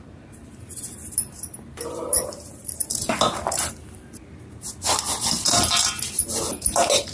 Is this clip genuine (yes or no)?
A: no